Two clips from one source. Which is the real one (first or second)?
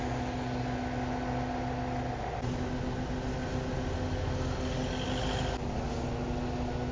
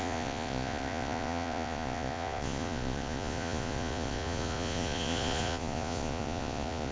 first